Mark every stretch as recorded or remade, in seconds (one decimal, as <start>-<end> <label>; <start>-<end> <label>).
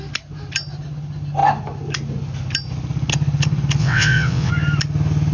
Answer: 0.0-3.8 recorded; 3.8-4.5 remade; 4.5-5.3 recorded